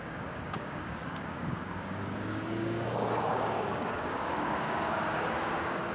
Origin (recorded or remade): remade